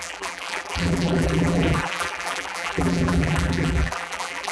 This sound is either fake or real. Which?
fake